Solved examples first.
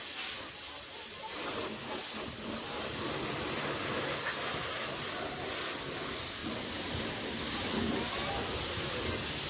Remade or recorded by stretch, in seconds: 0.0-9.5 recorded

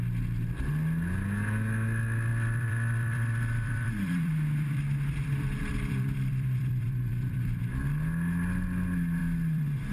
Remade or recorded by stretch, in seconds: 0.0-2.3 recorded; 2.3-7.6 remade; 7.6-9.2 recorded; 9.2-9.9 remade

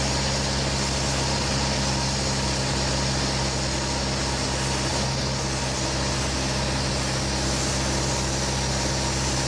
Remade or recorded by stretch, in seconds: 0.0-9.5 recorded